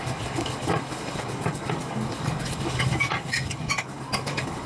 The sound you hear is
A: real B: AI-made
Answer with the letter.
B